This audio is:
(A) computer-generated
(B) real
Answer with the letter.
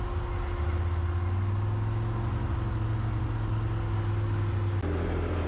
B